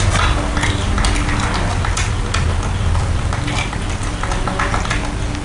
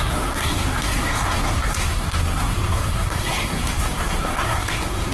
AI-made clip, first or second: second